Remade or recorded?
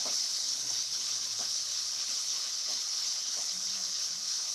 remade